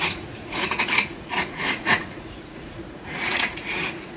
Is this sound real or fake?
fake